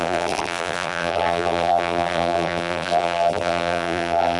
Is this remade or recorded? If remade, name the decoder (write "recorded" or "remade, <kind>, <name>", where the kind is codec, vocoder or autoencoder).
remade, vocoder, BigVGAN v2